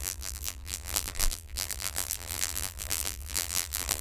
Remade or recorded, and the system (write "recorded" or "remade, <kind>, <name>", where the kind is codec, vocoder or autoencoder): remade, vocoder, BigVGAN v2